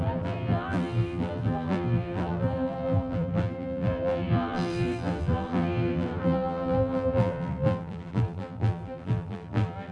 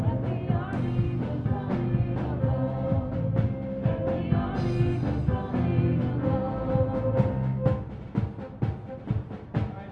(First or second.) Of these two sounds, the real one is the second